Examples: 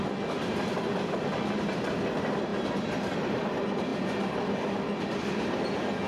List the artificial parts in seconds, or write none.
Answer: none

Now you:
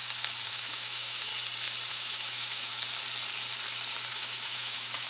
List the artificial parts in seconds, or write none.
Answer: 0.5-1.3; 1.9-2.7; 4.1-5.1

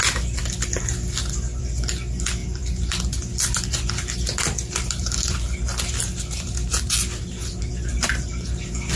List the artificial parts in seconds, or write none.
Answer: 2.4-2.9

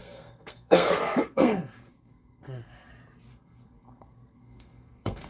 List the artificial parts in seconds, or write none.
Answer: 0.0-2.9; 3.3-5.3